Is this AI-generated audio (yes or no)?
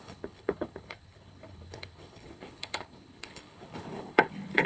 yes